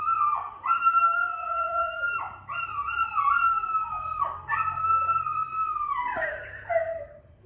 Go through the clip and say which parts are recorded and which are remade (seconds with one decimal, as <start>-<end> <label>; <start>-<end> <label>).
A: 0.0-1.4 recorded; 1.4-1.9 remade; 1.9-7.5 recorded